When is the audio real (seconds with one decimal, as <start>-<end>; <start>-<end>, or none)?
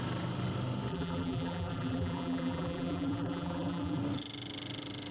0.0-0.9; 4.0-5.1